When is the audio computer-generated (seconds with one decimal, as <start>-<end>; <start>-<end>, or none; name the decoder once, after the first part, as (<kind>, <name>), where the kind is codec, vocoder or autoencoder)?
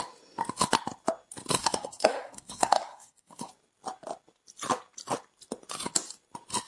1.6-3.5 (codec, SNAC)